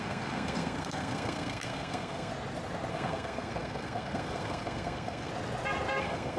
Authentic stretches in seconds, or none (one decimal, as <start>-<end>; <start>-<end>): 2.3-2.9; 5.3-6.0